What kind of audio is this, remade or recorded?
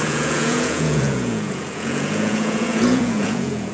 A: remade